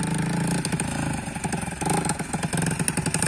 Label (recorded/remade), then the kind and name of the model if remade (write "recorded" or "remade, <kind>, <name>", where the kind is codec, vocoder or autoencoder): recorded